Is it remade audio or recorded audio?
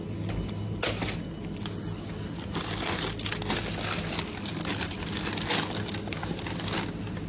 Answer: recorded